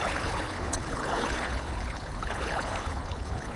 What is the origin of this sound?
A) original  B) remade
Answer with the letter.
B